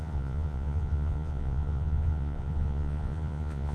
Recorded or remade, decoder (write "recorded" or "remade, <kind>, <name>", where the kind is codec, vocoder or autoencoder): remade, vocoder, Vocos